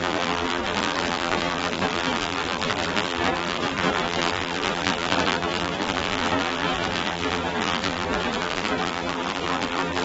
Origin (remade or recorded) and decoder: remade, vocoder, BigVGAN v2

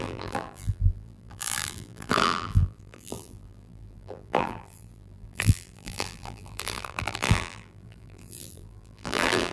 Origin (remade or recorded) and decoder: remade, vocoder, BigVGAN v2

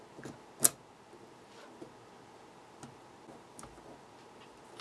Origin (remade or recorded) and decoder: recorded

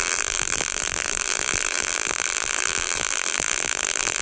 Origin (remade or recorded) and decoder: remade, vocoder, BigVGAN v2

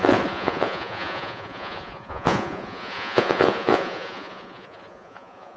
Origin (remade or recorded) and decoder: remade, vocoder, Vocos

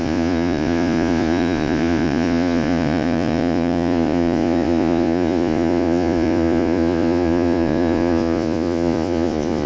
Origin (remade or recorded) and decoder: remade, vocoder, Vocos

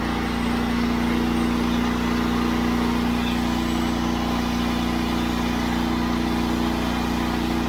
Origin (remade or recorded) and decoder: recorded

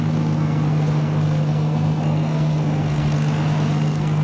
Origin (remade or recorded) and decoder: remade, codec, SNAC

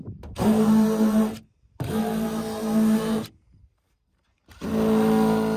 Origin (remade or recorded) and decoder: recorded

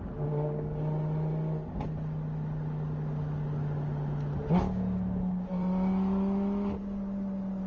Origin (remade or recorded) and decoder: recorded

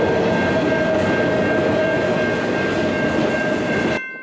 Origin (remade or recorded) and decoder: recorded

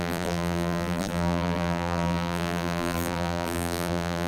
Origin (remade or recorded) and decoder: remade, vocoder, BigVGAN v2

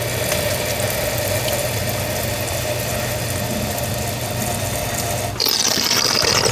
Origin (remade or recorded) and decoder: recorded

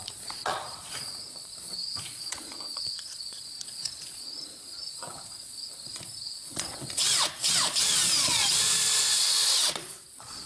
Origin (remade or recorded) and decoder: remade, vocoder, Vocos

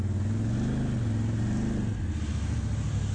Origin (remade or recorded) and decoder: recorded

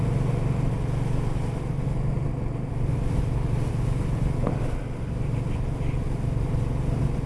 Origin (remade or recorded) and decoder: recorded